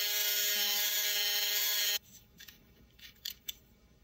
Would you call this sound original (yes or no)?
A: no